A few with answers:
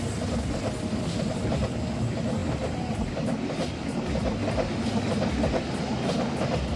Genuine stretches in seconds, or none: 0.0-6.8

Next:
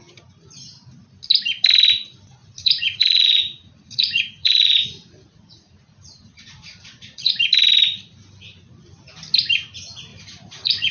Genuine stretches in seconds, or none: 0.0-2.4; 7.3-10.1

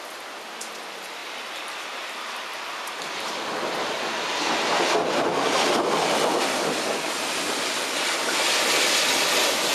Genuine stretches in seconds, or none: 0.0-1.2; 3.5-9.7

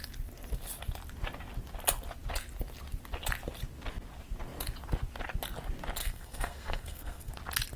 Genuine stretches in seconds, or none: 0.0-6.0; 7.3-7.8